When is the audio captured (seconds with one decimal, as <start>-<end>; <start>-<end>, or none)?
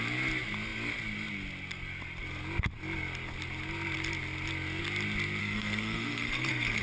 0.0-5.4